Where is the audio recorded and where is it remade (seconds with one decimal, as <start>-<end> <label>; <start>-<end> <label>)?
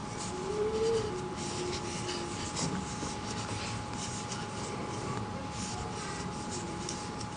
0.0-4.4 recorded; 4.4-5.4 remade; 5.4-7.4 recorded